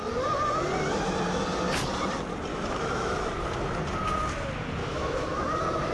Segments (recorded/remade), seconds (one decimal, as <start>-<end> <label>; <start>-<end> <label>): 0.0-2.5 recorded; 2.5-3.3 remade; 3.3-4.8 recorded; 4.8-5.4 remade; 5.4-5.9 recorded